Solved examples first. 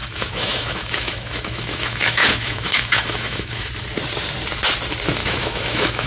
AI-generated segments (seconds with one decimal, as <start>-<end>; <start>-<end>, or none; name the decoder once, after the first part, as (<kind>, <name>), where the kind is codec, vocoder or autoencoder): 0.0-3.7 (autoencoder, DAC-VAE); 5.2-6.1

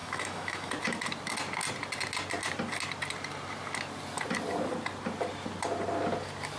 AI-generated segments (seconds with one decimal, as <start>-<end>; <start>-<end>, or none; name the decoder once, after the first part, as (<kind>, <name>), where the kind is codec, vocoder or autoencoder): 0.0-0.7 (autoencoder, DAC-VAE)

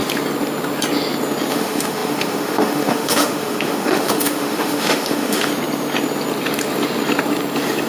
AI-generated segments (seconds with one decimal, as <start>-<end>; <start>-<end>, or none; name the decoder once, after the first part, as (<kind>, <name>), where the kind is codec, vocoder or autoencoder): 1.5-5.5 (autoencoder, DAC-VAE)

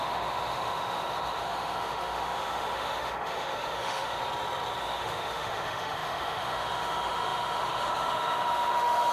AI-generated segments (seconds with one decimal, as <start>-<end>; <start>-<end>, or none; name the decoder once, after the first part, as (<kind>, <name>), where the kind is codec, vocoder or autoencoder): 0.0-4.2 (autoencoder, DAC-VAE); 4.8-9.1

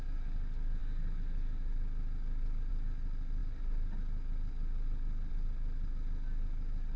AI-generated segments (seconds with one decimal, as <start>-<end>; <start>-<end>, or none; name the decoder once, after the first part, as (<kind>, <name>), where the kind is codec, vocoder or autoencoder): none